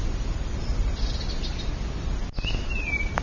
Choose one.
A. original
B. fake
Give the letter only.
A